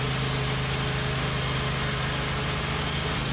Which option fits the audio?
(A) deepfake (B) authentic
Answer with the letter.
B